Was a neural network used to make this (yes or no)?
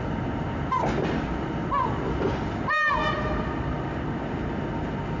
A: no